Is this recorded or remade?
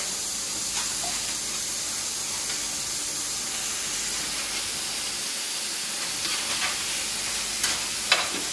recorded